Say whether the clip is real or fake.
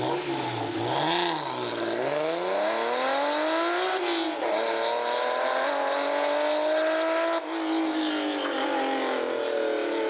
real